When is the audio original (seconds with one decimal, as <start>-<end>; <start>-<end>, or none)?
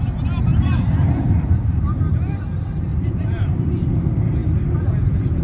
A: 0.0-0.5; 1.8-2.9; 3.6-5.4